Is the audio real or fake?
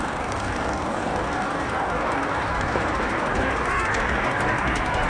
fake